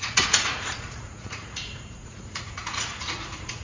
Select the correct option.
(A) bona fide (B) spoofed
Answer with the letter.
B